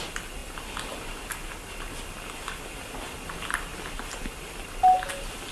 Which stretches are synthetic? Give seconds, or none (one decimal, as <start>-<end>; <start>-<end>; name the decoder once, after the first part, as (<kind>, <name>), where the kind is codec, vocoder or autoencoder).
none